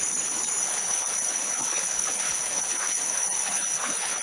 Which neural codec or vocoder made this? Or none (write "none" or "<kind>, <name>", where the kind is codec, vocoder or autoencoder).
codec, HILCodec